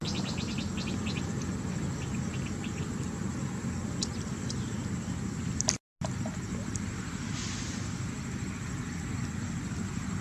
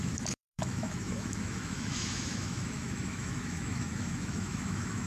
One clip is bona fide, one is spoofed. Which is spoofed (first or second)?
second